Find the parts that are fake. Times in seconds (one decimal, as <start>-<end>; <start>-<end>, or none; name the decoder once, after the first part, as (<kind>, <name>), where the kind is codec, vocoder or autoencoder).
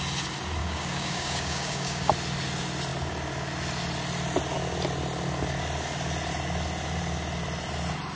0.6-2.1 (codec, DAC)